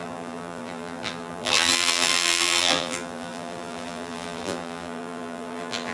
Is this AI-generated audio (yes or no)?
yes